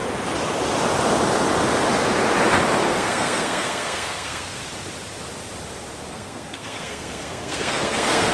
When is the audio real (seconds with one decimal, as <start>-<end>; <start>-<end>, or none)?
0.0-2.9; 4.6-6.1